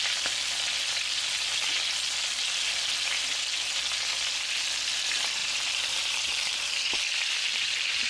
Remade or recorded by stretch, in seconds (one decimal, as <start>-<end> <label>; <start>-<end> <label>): 0.0-5.4 recorded; 5.4-7.0 remade; 7.0-7.5 recorded; 7.5-8.1 remade